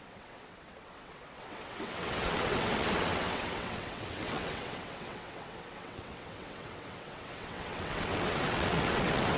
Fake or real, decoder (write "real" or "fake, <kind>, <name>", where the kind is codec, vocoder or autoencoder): fake, vocoder, WaveNeXt